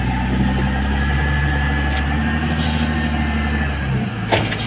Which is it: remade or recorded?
recorded